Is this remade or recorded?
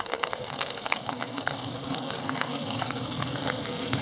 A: remade